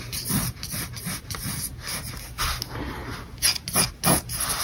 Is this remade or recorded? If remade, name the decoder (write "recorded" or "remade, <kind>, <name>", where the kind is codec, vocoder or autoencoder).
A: recorded